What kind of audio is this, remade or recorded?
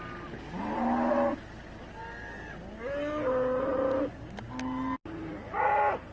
recorded